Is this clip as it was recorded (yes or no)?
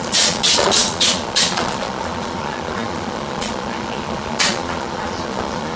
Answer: no